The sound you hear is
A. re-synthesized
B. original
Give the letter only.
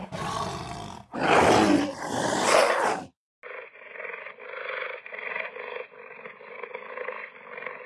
B